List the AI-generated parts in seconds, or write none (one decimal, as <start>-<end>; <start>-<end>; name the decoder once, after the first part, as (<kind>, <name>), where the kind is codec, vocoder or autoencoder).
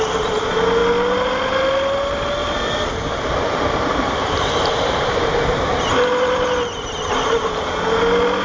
none